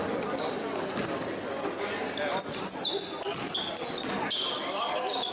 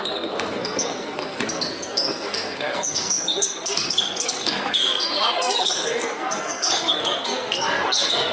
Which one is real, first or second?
first